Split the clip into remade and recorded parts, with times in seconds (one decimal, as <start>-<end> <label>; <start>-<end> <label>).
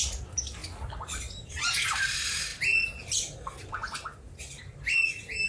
0.0-5.5 recorded